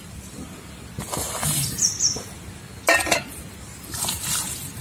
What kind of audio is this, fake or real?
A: real